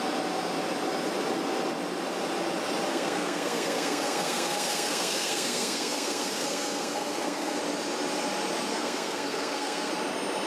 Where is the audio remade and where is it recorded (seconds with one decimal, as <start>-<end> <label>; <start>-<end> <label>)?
0.0-2.9 recorded; 2.9-7.6 remade; 7.6-8.7 recorded; 8.7-9.9 remade; 9.9-10.5 recorded